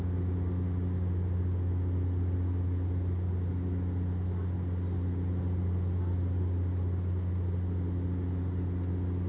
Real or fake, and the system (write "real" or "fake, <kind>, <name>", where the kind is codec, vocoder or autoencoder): real